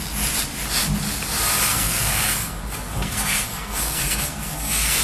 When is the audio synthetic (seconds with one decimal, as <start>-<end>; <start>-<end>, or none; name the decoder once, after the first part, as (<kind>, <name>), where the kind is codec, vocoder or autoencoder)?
1.7-5.0 (codec, SNAC)